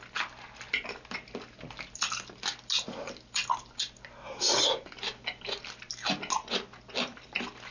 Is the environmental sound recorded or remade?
recorded